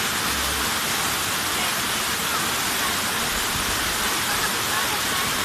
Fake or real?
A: real